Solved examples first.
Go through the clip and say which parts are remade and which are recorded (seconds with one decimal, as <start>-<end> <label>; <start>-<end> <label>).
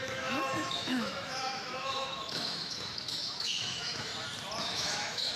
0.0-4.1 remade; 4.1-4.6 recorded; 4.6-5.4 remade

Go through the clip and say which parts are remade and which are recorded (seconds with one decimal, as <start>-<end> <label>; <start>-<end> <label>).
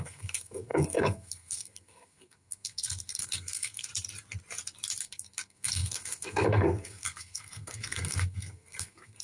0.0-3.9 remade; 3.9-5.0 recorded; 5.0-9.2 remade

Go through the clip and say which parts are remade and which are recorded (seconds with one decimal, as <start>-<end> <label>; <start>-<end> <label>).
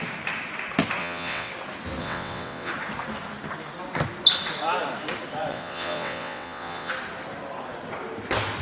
0.0-1.0 recorded; 1.0-1.5 remade; 1.5-2.0 recorded; 2.0-2.7 remade; 2.7-5.5 recorded; 5.5-6.9 remade; 6.9-8.6 recorded